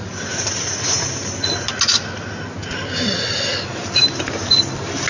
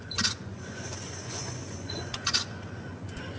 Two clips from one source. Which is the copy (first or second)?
second